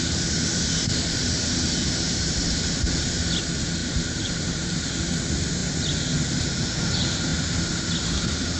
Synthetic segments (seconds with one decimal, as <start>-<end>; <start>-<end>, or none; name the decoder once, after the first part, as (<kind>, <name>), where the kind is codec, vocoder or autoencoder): 3.8-4.8 (vocoder, BigVGAN v2)